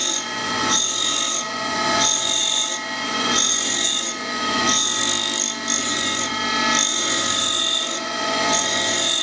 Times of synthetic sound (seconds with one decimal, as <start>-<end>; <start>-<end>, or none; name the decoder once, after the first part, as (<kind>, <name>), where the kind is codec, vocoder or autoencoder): 0.0-5.0 (vocoder, Vocos); 5.8-6.3; 6.9-9.2